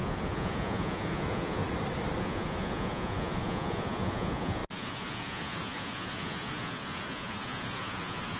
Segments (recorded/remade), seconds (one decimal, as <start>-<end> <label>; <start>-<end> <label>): 0.0-1.6 remade; 1.6-2.2 recorded; 2.2-8.4 remade